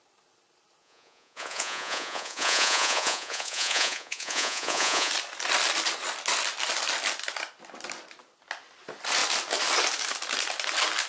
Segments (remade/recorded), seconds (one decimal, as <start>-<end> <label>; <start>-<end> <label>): 0.0-0.8 recorded; 0.8-5.1 remade; 5.1-11.1 recorded